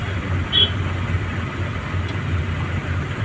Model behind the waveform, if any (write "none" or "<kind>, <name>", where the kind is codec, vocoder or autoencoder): none